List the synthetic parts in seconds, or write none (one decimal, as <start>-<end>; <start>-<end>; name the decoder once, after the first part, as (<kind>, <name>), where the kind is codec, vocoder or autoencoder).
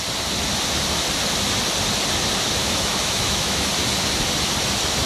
2.6-3.7 (autoencoder, DAC-VAE)